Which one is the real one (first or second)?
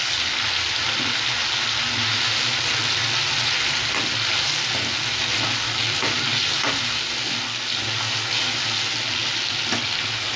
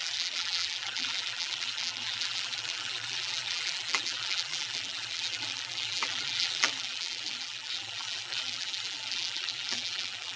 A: first